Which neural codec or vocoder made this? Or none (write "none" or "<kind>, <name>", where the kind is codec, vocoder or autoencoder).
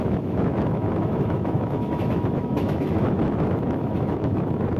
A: autoencoder, DAC-VAE